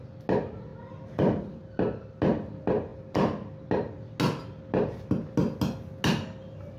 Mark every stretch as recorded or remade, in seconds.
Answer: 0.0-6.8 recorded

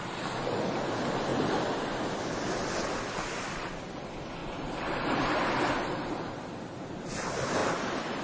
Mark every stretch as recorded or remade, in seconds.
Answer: 0.0-4.4 recorded; 4.4-6.4 remade; 6.4-7.6 recorded; 7.6-8.2 remade

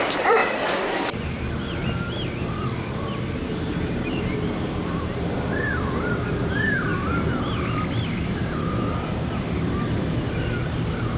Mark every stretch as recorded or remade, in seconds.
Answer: 0.0-0.4 remade; 0.4-3.5 recorded; 3.5-6.9 remade; 6.9-11.2 recorded

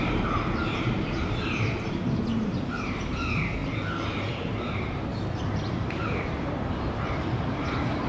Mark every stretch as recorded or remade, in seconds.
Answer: 0.0-3.6 remade; 3.6-4.3 recorded; 4.3-8.1 remade

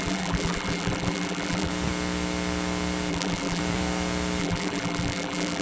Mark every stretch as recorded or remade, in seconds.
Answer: 0.0-1.7 remade; 1.7-3.1 recorded; 3.1-3.6 remade; 3.6-4.4 recorded; 4.4-5.6 remade

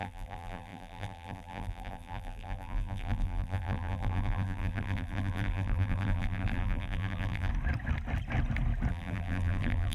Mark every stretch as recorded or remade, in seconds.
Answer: 0.0-7.5 remade; 7.5-8.9 recorded; 8.9-9.9 remade